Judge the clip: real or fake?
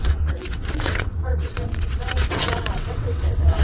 fake